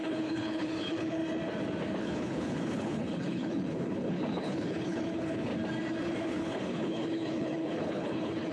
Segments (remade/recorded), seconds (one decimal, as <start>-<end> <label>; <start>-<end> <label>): 0.0-1.2 remade; 1.2-2.0 recorded; 2.0-5.5 remade; 5.5-6.2 recorded; 6.2-8.5 remade

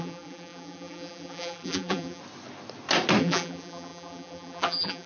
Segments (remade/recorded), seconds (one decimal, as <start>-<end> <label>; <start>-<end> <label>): 0.0-2.2 remade; 2.2-3.2 recorded; 3.2-5.1 remade

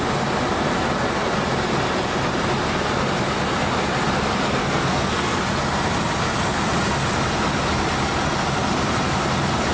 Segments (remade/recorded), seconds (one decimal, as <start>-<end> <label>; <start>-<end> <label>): 0.0-4.6 recorded; 4.6-5.4 remade; 5.4-9.7 recorded

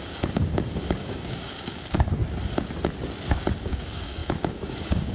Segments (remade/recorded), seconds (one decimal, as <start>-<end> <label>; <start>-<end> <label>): 0.0-2.2 remade; 2.2-3.7 recorded; 3.7-5.1 remade